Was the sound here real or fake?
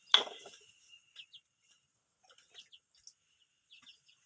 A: real